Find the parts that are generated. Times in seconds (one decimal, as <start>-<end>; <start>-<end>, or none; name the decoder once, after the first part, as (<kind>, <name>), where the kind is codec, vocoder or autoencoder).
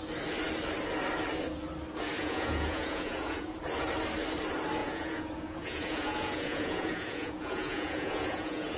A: 2.2-3.6 (vocoder, Vocos); 4.8-8.8